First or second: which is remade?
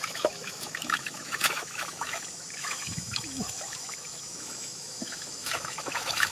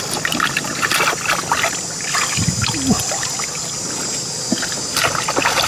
first